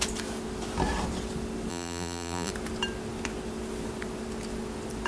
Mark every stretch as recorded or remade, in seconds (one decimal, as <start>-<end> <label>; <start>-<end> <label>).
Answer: 0.0-1.7 recorded; 1.7-2.5 remade; 2.5-5.1 recorded

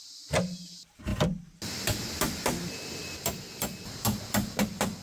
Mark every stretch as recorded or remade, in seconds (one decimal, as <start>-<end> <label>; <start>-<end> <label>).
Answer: 0.0-1.1 recorded; 1.1-1.6 remade; 1.6-5.0 recorded

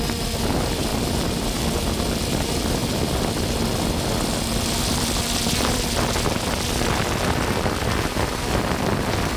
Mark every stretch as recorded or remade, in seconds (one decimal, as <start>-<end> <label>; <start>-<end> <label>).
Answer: 0.0-0.9 recorded; 0.9-1.9 remade; 1.9-9.4 recorded

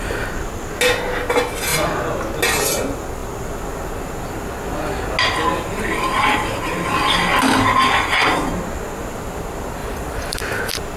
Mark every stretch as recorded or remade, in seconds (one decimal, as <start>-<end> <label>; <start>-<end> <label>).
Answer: 0.0-7.3 recorded; 7.3-7.8 remade; 7.8-9.8 recorded; 9.8-10.5 remade; 10.5-11.0 recorded

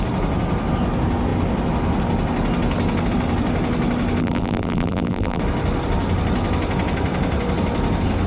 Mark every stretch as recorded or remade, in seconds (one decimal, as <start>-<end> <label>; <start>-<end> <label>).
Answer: 0.0-4.2 recorded; 4.2-5.4 remade; 5.4-8.3 recorded